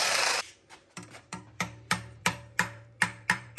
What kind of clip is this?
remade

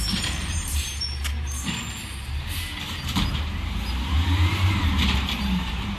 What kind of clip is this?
remade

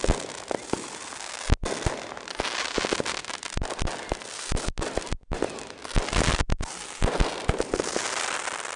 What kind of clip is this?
recorded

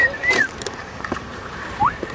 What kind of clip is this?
remade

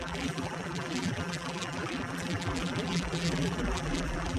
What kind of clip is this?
remade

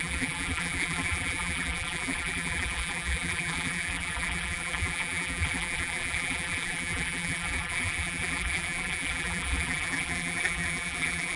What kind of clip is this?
remade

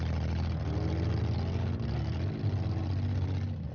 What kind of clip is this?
recorded